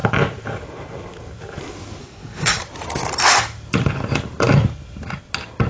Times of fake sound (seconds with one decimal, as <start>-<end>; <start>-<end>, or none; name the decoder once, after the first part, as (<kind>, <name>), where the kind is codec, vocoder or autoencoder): 2.0-2.6 (codec, SNAC)